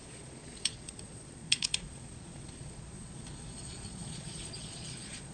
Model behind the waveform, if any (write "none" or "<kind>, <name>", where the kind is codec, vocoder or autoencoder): vocoder, Vocos